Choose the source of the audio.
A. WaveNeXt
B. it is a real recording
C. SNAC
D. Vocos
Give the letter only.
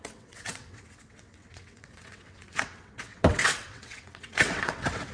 A